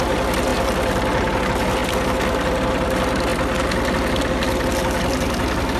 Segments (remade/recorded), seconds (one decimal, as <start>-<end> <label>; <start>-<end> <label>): 0.0-5.8 recorded